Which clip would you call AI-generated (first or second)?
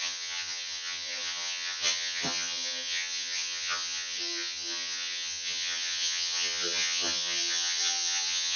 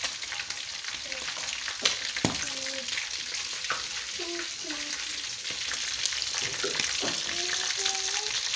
first